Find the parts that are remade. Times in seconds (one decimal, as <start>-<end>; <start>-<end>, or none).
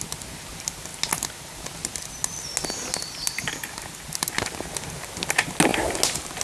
none